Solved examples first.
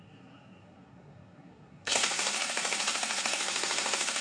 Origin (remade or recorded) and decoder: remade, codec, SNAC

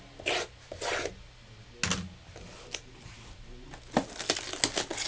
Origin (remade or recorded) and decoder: recorded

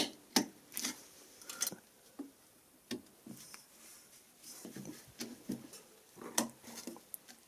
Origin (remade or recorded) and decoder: recorded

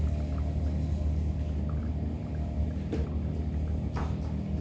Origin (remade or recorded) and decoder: recorded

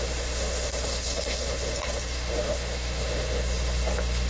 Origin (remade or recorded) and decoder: remade, autoencoder, DAC-VAE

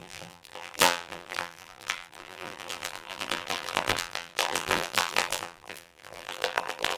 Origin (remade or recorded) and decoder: remade, vocoder, BigVGAN v2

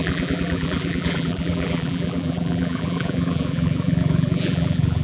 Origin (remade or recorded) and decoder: remade, vocoder, BigVGAN v2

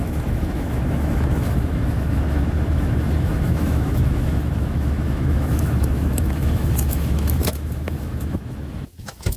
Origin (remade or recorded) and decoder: remade, autoencoder, DAC-VAE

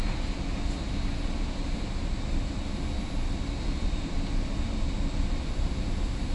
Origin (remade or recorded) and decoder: recorded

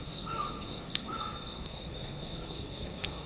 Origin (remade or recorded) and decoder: remade, codec, SNAC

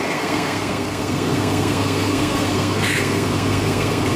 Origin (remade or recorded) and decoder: remade, codec, SNAC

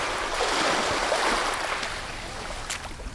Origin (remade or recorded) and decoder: recorded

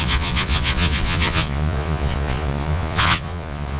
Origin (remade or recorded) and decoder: remade, vocoder, Vocos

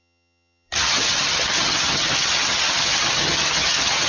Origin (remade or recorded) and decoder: remade, vocoder, HiFi-GAN